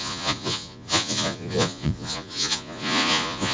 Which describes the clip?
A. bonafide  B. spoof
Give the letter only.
B